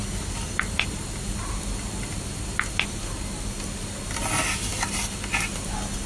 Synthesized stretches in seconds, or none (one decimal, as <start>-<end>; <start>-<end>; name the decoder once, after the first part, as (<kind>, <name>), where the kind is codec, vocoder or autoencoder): none

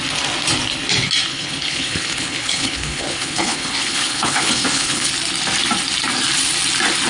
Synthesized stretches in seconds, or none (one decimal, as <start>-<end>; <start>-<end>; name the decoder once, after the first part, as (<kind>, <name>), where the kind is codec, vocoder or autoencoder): 1.3-5.1 (codec, HILCodec)

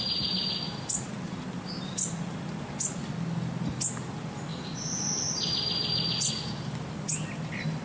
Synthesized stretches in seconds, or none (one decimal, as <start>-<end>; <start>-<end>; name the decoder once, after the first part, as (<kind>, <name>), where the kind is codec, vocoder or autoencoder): none

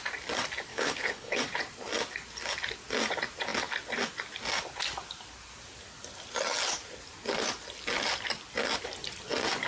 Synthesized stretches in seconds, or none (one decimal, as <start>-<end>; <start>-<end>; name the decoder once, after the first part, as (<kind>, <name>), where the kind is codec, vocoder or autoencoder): 0.7-1.4 (codec, HILCodec)

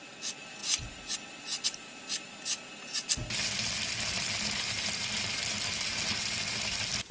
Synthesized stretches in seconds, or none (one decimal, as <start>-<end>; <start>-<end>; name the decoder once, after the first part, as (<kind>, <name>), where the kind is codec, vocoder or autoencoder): none

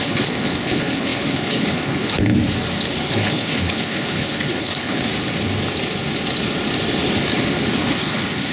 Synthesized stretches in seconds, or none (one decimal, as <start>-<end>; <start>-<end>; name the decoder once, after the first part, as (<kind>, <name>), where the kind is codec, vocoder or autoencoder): 0.0-2.3 (codec, HILCodec); 3.1-5.1; 7.9-8.5

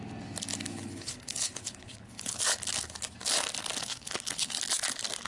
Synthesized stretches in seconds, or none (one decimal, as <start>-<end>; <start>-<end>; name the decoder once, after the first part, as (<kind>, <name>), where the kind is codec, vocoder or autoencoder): 0.7-2.4 (codec, HILCodec); 3.8-4.6

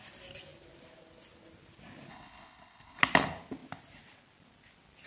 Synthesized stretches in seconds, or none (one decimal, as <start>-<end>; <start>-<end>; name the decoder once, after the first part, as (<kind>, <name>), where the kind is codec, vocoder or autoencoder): 2.1-3.0 (codec, HILCodec)